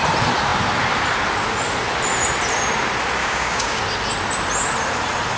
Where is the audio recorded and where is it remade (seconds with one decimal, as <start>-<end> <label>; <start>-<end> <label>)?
0.0-3.2 recorded; 3.2-3.8 remade; 3.8-5.4 recorded